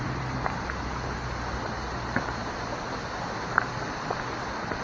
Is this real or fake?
real